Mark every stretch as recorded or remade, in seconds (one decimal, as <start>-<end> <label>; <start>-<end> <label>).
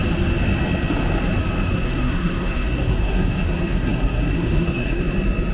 0.0-1.7 recorded; 1.7-5.0 remade; 5.0-5.5 recorded